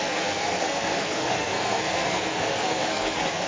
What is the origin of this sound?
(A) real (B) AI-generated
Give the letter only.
B